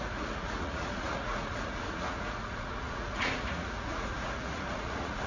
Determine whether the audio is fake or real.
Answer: fake